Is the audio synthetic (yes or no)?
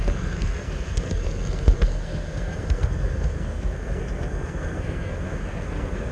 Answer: yes